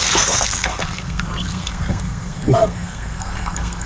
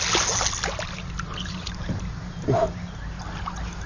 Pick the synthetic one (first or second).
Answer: first